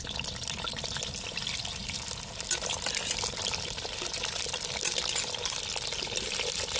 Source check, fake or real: real